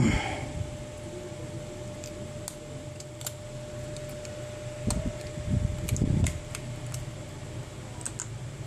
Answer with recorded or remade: recorded